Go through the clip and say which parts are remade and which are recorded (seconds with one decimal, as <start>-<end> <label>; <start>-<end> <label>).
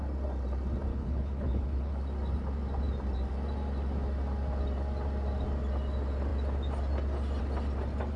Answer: 0.0-0.9 recorded; 0.9-1.9 remade; 1.9-8.2 recorded